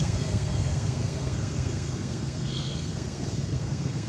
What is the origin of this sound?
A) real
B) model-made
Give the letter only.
B